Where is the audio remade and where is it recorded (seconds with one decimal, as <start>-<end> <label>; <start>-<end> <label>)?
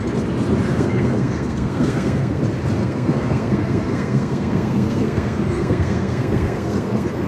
0.0-0.7 recorded; 0.7-2.4 remade; 2.4-2.8 recorded; 2.8-7.3 remade